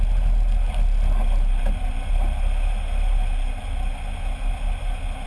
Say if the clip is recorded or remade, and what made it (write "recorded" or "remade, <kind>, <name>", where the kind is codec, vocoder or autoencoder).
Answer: recorded